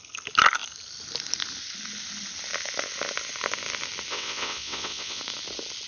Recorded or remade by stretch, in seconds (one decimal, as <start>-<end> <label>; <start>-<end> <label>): 0.0-4.1 recorded; 4.1-5.2 remade; 5.2-5.9 recorded